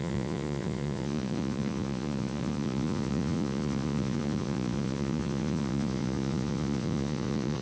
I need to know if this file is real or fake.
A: fake